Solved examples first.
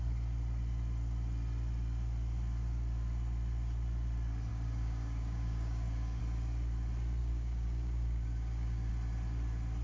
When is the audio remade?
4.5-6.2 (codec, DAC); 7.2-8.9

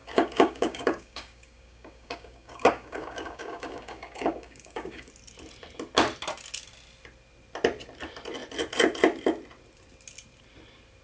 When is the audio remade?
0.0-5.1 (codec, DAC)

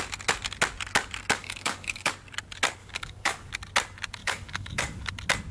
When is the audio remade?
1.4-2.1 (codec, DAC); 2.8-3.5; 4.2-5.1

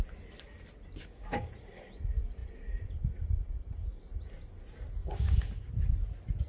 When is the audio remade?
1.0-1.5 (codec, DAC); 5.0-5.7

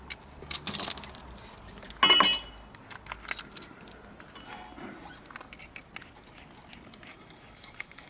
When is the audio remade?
7.1-8.1 (codec, DAC)

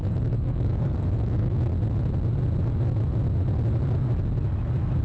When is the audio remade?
0.0-1.7 (codec, DAC)

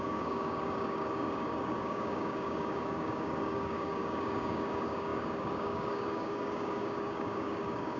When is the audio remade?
0.0-8.0 (codec, DAC)

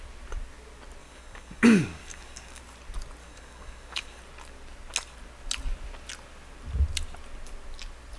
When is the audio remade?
1.0-2.6 (codec, DAC); 3.2-4.2